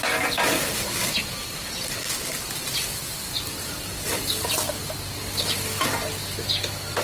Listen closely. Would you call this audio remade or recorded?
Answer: recorded